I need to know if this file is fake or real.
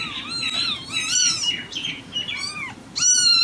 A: real